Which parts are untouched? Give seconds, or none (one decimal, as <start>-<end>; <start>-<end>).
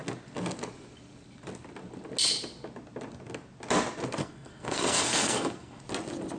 0.0-4.2; 5.8-6.4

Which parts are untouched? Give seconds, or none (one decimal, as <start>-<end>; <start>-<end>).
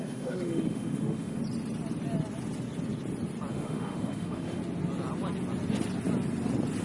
1.4-3.5; 4.6-6.8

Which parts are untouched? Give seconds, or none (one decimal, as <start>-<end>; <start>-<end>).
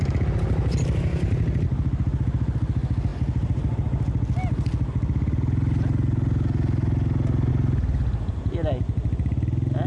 0.0-9.9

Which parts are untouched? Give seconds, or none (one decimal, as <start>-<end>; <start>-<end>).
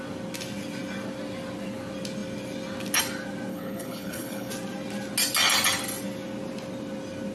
0.0-3.5; 4.5-7.3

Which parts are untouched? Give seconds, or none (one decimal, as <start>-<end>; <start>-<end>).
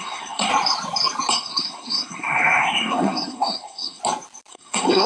0.5-1.3; 4.0-4.5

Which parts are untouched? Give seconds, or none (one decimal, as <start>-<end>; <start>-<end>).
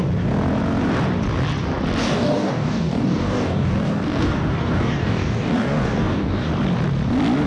0.0-2.0; 6.5-7.5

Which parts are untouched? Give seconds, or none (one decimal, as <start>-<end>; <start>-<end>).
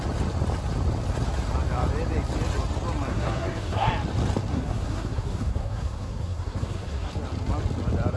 0.0-3.1; 3.9-4.5; 7.1-8.2